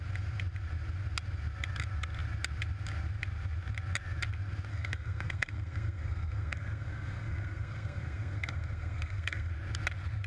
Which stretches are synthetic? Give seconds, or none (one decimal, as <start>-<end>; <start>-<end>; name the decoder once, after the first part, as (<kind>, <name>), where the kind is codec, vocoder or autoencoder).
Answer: 4.7-9.5 (codec, SNAC)